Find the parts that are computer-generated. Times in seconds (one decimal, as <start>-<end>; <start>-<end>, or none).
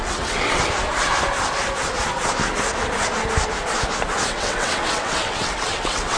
0.0-0.6; 4.3-6.2